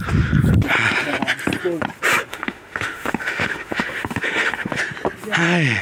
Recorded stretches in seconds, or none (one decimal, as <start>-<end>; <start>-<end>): 0.0-2.3; 4.8-5.8